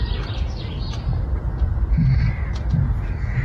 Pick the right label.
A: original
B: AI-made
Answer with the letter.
A